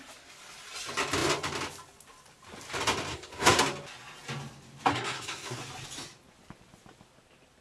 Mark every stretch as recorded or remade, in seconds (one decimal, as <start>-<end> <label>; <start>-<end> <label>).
0.0-3.1 recorded; 3.1-3.6 remade; 3.6-4.9 recorded; 4.9-5.6 remade; 5.6-7.6 recorded